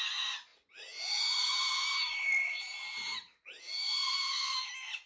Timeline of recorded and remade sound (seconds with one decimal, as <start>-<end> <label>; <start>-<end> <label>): 0.0-5.1 recorded